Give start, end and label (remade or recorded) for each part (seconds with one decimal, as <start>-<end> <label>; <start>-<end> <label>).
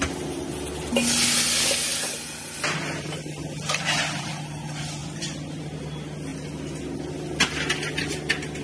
0.0-8.6 recorded